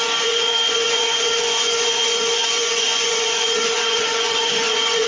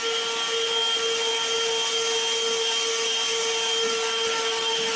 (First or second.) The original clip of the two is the second